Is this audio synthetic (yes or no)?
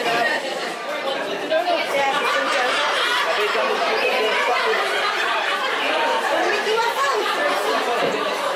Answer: yes